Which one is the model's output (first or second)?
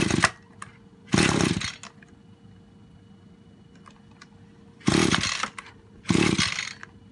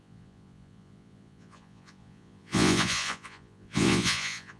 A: second